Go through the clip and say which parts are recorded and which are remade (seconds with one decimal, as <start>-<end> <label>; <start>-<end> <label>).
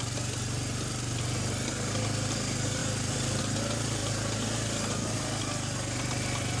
0.0-2.8 recorded; 2.8-3.4 remade; 3.4-4.0 recorded; 4.0-4.7 remade; 4.7-6.6 recorded